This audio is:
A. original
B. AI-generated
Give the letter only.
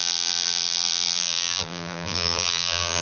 B